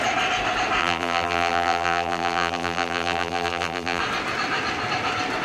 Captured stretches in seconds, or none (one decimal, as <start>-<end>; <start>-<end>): 0.0-0.8; 4.0-5.4